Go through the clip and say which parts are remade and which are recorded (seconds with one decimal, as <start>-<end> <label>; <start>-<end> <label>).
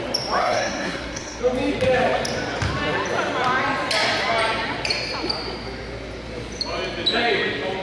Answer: 0.0-0.4 recorded; 0.4-1.4 remade; 1.4-7.8 recorded